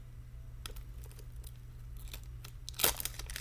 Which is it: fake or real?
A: real